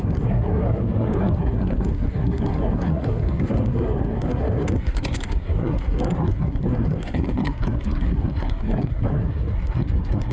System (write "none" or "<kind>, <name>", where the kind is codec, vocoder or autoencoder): codec, SNAC